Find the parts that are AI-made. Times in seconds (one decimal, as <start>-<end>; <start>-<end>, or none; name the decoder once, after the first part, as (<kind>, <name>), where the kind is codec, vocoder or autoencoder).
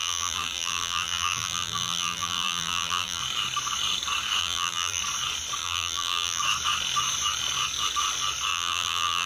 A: 0.0-3.2 (vocoder, BigVGAN v2); 4.4-5.0; 5.6-6.4; 8.5-9.3